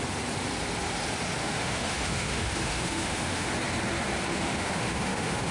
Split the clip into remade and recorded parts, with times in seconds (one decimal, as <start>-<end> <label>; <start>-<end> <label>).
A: 0.0-1.4 recorded; 1.4-3.5 remade; 3.5-4.3 recorded; 4.3-5.5 remade